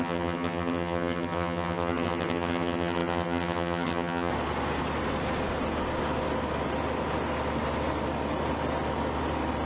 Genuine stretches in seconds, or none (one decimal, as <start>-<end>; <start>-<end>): 4.3-9.7